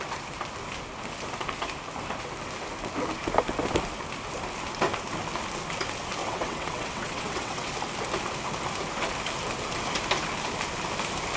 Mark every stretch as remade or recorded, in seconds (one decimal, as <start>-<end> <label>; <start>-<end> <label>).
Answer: 0.0-6.2 recorded; 6.2-7.7 remade; 7.7-11.4 recorded